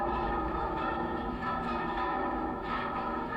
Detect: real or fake fake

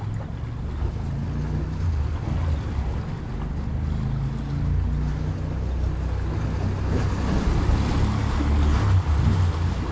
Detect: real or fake real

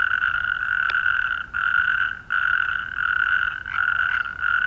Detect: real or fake real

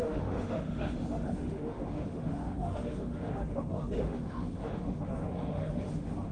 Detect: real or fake fake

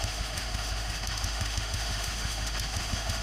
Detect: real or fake fake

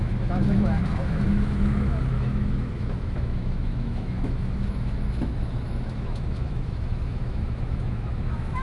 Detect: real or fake fake